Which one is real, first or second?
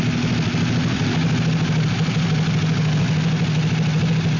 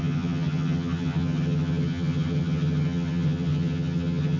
first